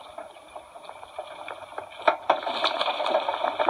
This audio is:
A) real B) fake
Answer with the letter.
A